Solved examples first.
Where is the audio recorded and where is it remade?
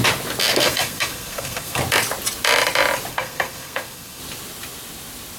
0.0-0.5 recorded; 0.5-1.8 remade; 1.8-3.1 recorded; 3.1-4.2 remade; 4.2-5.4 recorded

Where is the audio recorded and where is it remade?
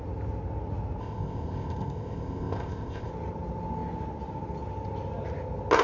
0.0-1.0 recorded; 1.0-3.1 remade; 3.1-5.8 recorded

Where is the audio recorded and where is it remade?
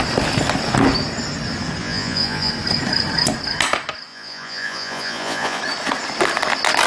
0.0-1.8 recorded; 1.8-2.5 remade; 2.5-4.1 recorded; 4.1-5.6 remade; 5.6-6.9 recorded